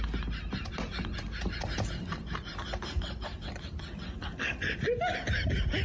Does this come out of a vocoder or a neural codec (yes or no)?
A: no